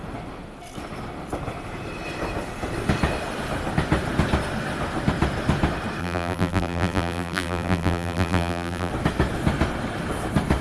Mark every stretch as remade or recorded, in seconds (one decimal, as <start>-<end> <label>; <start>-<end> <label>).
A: 0.0-6.0 recorded; 6.0-8.9 remade; 8.9-10.6 recorded